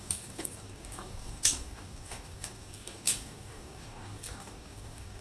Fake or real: fake